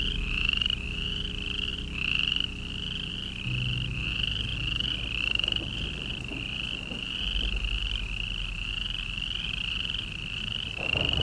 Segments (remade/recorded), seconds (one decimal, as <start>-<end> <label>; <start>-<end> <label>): 0.0-11.2 recorded